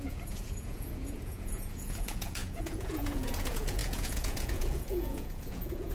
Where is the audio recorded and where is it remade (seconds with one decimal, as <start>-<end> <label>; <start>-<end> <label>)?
0.0-5.9 remade